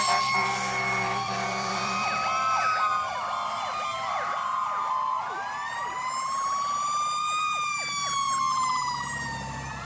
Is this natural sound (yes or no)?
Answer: no